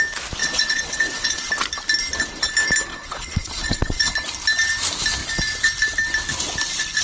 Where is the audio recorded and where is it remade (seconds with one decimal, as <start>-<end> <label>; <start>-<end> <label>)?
0.0-0.4 recorded; 0.4-1.5 remade; 1.5-2.9 recorded; 2.9-4.1 remade; 4.1-7.0 recorded